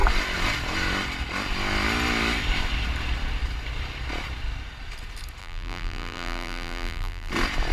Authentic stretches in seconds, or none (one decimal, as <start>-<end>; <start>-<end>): 0.0-5.4; 7.3-7.7